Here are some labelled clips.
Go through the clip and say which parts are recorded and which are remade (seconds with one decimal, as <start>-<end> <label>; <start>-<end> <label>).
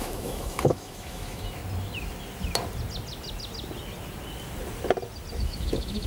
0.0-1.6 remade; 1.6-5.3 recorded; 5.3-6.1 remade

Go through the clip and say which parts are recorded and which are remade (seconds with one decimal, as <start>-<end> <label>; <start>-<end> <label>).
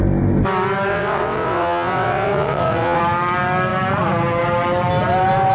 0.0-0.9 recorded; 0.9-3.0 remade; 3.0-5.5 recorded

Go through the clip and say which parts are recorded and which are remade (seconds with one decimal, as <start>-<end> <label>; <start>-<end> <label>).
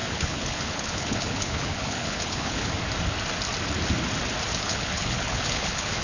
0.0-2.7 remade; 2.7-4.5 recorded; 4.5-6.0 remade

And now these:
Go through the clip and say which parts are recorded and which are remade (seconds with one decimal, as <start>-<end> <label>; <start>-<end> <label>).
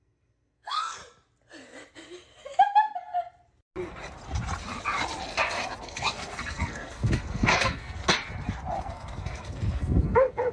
0.0-1.0 remade; 1.0-5.8 recorded; 5.8-8.0 remade; 8.0-8.8 recorded; 8.8-10.5 remade